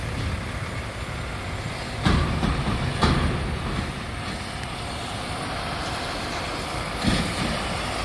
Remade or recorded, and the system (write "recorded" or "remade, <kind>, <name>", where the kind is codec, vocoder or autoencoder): recorded